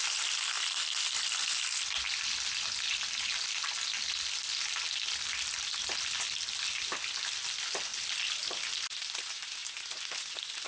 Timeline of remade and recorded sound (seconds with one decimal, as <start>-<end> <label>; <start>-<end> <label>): 0.0-10.7 recorded